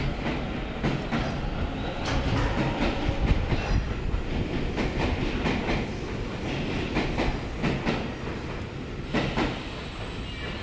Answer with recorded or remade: recorded